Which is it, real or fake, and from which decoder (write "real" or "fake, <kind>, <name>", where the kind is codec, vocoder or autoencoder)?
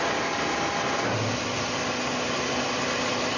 real